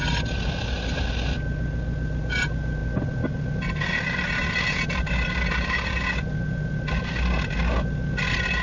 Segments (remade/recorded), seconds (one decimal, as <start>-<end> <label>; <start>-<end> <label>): 0.0-8.6 recorded